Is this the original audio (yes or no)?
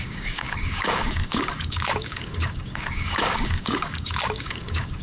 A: no